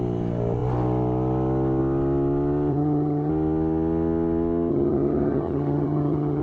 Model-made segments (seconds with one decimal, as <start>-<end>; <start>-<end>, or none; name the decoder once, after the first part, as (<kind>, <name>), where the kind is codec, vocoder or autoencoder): 2.7-3.3 (vocoder, HiFi-GAN); 4.7-6.4